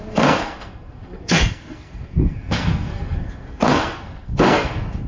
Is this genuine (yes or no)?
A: no